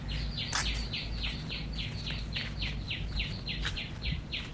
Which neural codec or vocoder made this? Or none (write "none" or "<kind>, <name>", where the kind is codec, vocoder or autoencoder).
none